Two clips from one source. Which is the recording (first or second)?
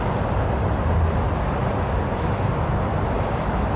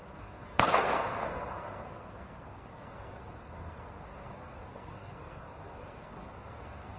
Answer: first